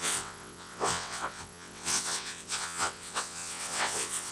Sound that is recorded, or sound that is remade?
remade